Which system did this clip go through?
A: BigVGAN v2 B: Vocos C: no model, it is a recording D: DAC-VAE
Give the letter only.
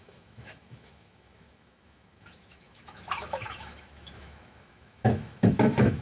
D